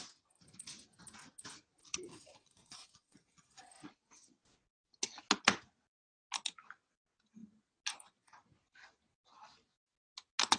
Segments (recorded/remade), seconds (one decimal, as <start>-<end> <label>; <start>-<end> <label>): 0.0-2.1 recorded; 2.1-3.7 remade; 3.7-10.6 recorded